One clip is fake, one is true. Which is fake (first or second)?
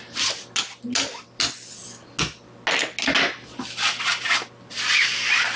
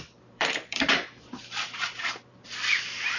second